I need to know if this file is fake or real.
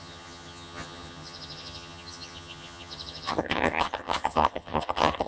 fake